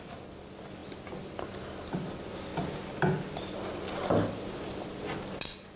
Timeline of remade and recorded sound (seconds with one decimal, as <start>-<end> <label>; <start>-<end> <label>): 0.0-0.8 remade; 0.8-2.1 recorded; 2.1-2.5 remade; 2.5-5.8 recorded